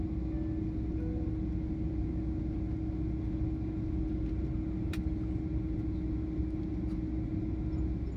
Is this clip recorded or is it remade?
recorded